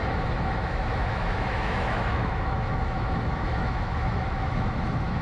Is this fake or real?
fake